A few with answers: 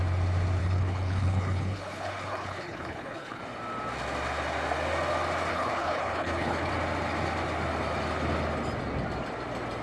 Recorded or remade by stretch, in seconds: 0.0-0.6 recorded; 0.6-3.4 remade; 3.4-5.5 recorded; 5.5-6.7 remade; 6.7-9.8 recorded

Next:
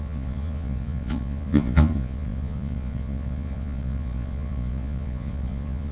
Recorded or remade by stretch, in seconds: 0.0-5.9 remade

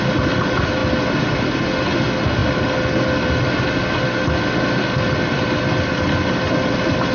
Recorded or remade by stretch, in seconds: 0.0-7.1 recorded

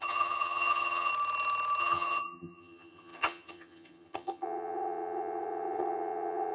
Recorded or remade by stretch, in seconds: 0.0-1.1 remade; 1.1-1.8 recorded; 1.8-6.5 remade

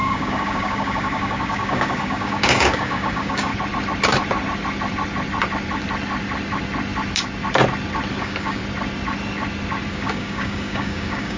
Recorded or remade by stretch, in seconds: 0.0-3.5 remade; 3.5-8.2 recorded; 8.2-8.6 remade; 8.6-9.9 recorded; 9.9-11.4 remade